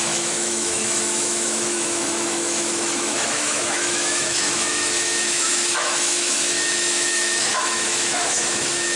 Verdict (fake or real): fake